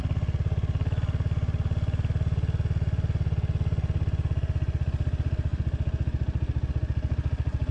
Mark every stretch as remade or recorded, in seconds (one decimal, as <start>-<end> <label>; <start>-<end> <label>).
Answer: 0.0-7.7 recorded